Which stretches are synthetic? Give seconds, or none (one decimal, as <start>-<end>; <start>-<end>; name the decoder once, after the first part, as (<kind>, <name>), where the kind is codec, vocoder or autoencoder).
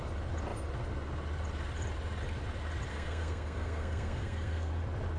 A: 2.9-4.7 (codec, SNAC)